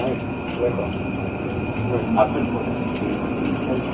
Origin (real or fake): real